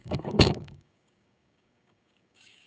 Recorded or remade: remade